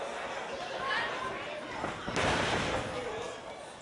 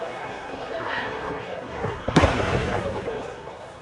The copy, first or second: second